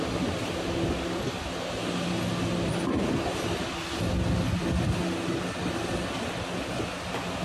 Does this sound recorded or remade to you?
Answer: recorded